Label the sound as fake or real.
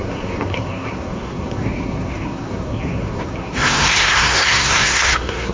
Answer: fake